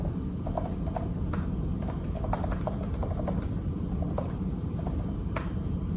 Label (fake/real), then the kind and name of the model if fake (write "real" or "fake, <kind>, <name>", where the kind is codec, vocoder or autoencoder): real